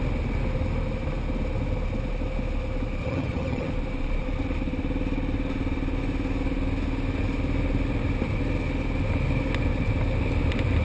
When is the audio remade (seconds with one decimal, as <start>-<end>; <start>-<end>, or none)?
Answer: 3.0-3.7